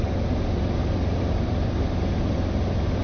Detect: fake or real real